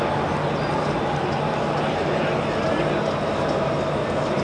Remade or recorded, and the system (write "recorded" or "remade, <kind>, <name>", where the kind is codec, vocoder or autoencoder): recorded